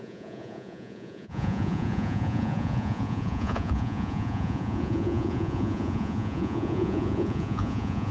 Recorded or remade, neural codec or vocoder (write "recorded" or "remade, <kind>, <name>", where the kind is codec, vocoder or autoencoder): remade, vocoder, Vocos